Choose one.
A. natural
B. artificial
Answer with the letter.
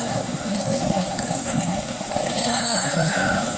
B